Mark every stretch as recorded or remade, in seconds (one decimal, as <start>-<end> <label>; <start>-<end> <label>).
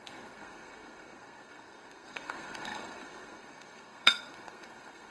0.0-5.1 remade